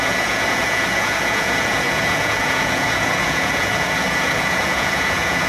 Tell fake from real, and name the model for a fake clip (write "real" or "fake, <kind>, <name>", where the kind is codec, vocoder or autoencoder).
fake, vocoder, Vocos